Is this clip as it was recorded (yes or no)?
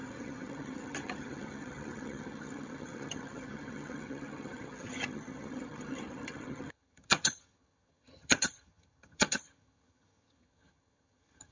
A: no